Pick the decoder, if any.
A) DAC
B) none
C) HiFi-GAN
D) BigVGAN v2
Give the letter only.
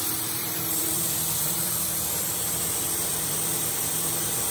D